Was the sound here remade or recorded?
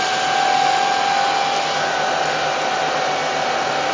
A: recorded